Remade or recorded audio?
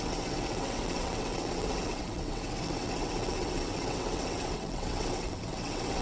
remade